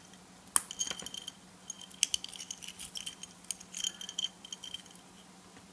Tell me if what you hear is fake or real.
real